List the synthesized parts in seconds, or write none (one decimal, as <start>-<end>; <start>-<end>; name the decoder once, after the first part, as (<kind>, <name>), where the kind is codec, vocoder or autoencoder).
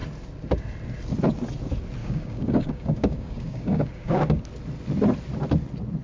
2.0-4.4 (codec, DAC)